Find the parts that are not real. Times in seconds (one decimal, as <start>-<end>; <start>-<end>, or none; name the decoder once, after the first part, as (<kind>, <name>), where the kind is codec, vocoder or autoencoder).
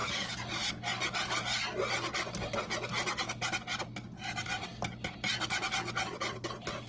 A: none